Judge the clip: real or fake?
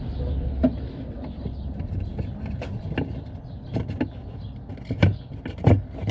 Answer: real